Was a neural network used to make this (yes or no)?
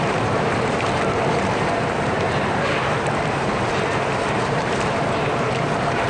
yes